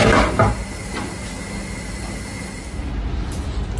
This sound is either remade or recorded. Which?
recorded